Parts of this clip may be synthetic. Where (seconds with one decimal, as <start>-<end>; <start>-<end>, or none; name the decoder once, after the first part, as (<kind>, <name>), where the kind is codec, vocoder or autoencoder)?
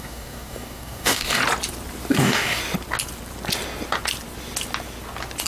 0.0-1.4 (codec, DAC); 2.1-2.6